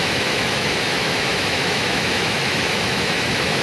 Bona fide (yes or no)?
no